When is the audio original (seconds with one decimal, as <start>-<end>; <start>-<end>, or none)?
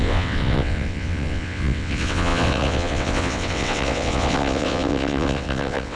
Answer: none